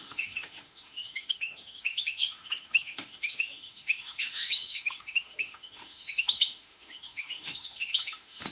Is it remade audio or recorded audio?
remade